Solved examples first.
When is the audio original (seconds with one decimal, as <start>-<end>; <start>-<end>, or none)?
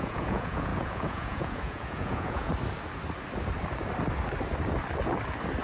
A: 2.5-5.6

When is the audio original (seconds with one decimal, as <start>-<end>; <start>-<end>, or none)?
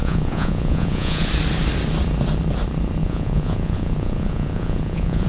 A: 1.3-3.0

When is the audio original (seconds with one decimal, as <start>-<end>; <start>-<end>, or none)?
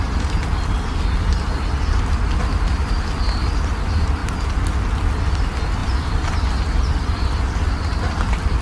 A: 0.0-8.6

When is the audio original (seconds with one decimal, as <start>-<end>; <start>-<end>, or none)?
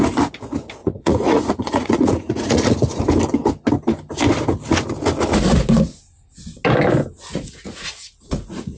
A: 0.0-0.8; 3.0-7.3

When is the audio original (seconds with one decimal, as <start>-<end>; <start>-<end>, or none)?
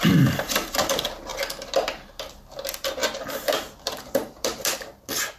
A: 0.0-5.4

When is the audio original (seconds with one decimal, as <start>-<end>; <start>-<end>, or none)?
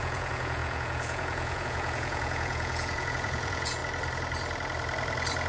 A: 3.8-5.5